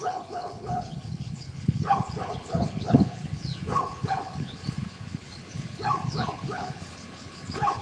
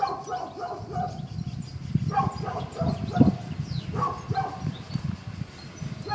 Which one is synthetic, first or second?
first